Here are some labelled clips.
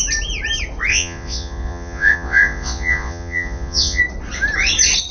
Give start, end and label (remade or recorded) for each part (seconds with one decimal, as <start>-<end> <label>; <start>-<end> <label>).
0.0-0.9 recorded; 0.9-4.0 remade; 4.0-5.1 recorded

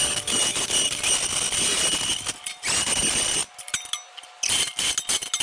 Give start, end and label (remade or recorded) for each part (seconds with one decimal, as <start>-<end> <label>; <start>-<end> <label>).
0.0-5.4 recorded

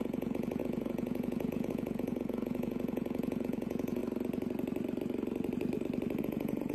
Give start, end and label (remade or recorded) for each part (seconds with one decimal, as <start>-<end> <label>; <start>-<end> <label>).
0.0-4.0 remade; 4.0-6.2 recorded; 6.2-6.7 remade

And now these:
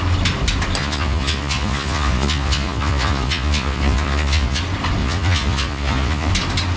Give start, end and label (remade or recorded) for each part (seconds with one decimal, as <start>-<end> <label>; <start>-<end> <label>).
0.0-0.8 recorded; 0.8-4.6 remade; 4.6-5.0 recorded; 5.0-6.3 remade; 6.3-6.8 recorded